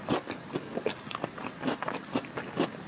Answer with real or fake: real